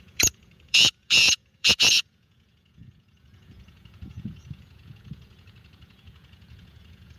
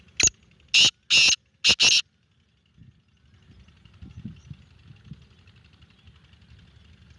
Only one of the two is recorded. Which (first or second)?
second